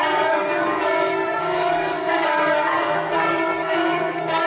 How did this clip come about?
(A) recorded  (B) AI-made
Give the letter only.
B